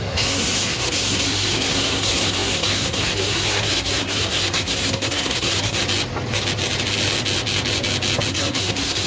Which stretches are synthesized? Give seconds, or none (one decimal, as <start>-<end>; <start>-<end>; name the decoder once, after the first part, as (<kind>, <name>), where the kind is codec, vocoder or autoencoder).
0.0-5.8 (codec, SNAC); 8.3-9.1